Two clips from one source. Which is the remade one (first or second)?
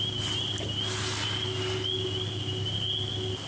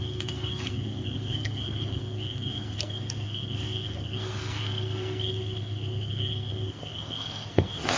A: second